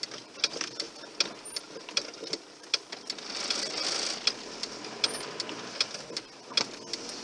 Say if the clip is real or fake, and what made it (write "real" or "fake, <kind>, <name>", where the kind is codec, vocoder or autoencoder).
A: real